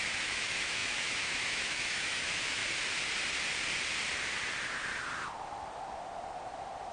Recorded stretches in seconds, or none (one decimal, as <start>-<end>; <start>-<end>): 2.6-6.9